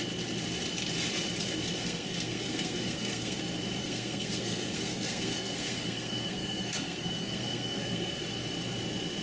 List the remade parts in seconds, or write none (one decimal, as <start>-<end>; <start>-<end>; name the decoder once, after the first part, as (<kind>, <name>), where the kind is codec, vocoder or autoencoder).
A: 1.8-3.4 (codec, SNAC); 3.8-8.2